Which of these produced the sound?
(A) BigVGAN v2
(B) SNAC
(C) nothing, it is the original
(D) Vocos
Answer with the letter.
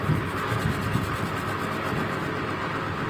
C